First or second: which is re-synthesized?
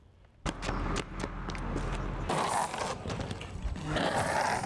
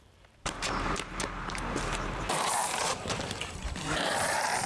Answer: second